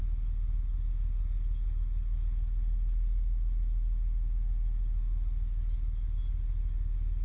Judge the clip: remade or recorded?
recorded